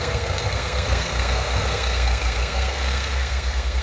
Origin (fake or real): fake